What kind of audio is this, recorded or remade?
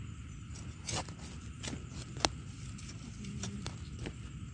recorded